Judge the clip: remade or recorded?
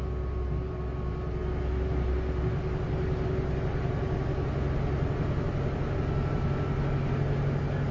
recorded